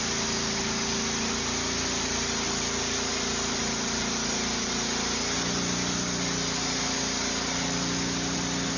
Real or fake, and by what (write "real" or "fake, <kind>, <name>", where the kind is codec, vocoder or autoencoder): real